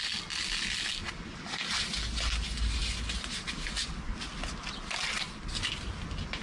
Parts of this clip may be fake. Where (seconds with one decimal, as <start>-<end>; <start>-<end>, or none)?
none